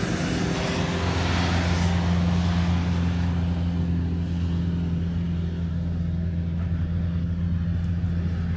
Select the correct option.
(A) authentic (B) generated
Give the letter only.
A